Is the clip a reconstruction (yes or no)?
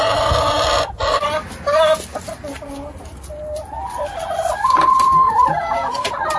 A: no